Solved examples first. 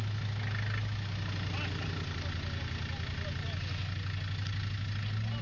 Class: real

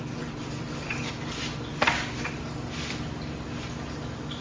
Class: real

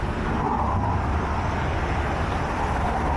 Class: real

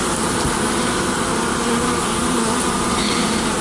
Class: real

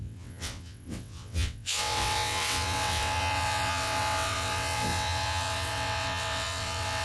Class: fake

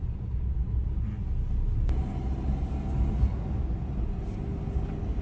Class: real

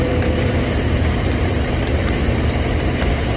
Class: fake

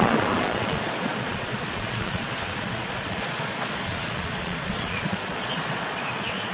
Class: fake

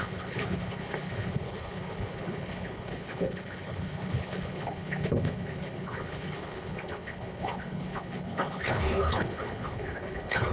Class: fake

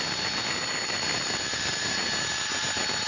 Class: real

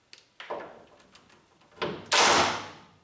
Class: real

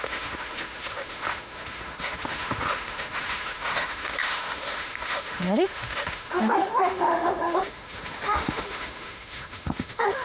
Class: fake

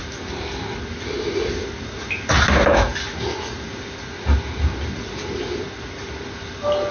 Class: real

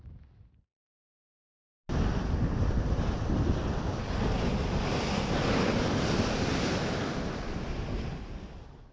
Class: real